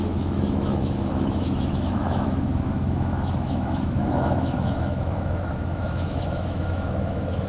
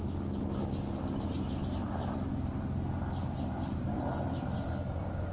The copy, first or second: first